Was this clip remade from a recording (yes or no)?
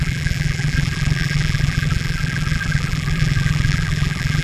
yes